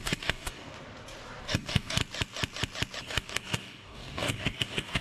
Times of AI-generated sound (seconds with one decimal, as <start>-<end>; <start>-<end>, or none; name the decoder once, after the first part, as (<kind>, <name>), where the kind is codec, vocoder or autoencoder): 0.0-0.7 (codec, DAC); 1.4-2.0; 3.0-5.0